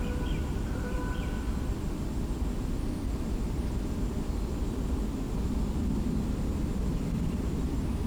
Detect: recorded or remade recorded